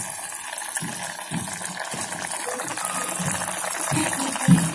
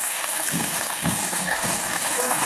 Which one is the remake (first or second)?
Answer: second